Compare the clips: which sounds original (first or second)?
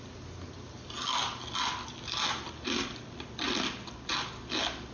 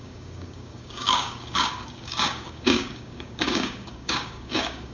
first